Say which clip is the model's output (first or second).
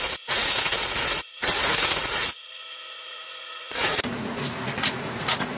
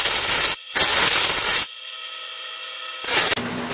first